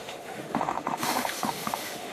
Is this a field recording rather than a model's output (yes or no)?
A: no